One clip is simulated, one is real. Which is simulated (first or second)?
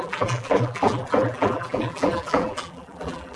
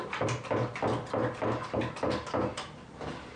first